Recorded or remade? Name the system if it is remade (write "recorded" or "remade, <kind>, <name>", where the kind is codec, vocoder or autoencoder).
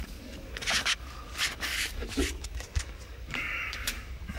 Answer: remade, codec, DAC